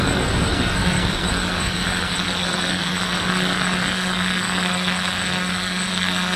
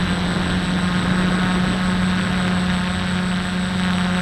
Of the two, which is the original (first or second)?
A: second